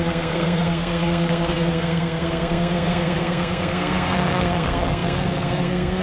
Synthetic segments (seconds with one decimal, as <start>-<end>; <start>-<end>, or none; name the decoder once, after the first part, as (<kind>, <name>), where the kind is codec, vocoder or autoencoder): 0.0-6.0 (codec, SNAC)